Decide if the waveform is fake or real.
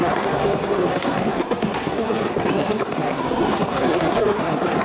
fake